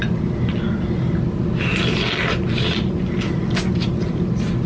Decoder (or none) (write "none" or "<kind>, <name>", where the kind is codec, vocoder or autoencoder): none